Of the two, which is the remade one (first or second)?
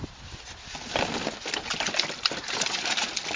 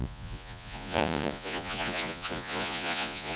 second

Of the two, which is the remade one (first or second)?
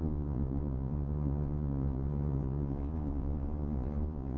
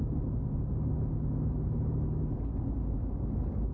first